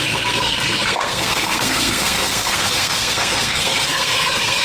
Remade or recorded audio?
remade